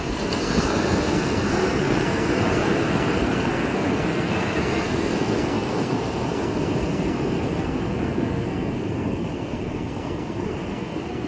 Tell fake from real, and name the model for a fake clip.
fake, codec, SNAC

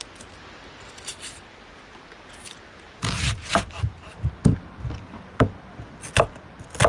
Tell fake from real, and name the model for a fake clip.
real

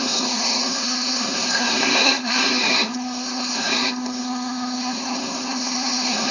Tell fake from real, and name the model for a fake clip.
fake, codec, SNAC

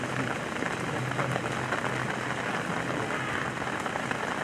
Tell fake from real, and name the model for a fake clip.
real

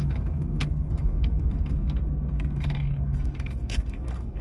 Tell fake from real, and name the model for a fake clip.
fake, codec, SNAC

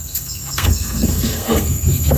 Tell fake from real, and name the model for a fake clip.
fake, codec, SNAC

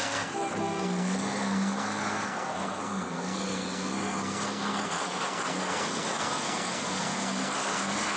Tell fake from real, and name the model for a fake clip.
fake, codec, SNAC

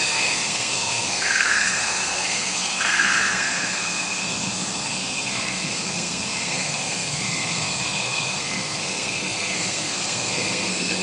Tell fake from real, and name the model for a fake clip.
fake, codec, SNAC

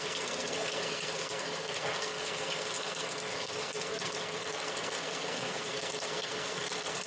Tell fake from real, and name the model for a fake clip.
fake, codec, SNAC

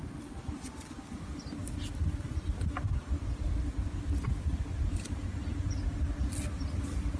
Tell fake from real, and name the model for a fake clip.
real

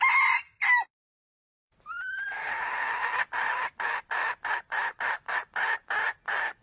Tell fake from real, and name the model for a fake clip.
real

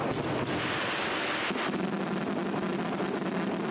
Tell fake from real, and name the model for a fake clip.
real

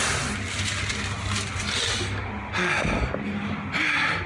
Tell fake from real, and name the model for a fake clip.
real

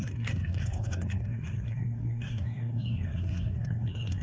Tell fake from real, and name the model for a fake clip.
fake, codec, SNAC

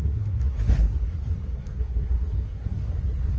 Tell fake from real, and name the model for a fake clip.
fake, codec, SNAC